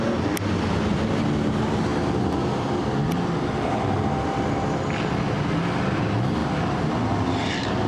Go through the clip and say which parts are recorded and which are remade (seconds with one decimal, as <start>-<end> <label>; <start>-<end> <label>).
0.0-7.9 recorded